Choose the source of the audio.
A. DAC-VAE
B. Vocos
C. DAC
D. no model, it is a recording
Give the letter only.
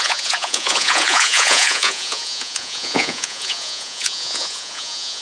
B